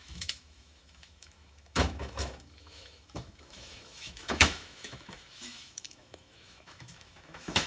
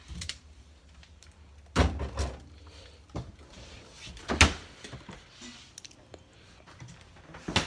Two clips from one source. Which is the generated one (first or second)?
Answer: first